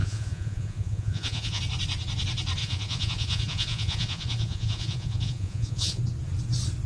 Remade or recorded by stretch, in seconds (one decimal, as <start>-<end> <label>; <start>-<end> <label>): 0.0-1.6 remade; 1.6-2.6 recorded; 2.6-6.0 remade; 6.0-6.9 recorded